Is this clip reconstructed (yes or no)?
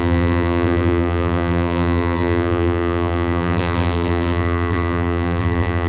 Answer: yes